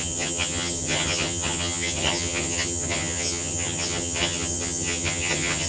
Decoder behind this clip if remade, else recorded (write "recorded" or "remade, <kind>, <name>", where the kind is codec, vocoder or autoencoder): remade, vocoder, HiFi-GAN